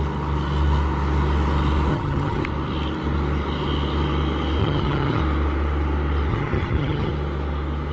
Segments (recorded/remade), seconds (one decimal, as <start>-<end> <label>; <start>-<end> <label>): 0.0-1.9 recorded; 1.9-2.4 remade; 2.4-4.6 recorded; 4.6-5.2 remade; 5.2-6.3 recorded; 6.3-7.1 remade; 7.1-7.9 recorded